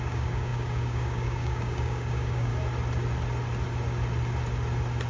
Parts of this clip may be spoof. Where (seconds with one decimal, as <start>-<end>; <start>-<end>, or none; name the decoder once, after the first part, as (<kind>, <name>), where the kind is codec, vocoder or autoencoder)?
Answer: 0.0-2.5 (codec, DAC)